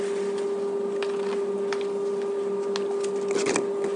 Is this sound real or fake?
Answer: real